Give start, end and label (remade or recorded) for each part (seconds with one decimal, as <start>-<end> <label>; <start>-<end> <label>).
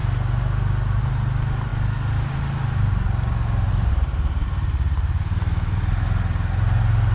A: 0.0-7.1 recorded